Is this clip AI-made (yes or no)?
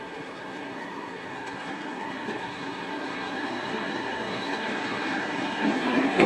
yes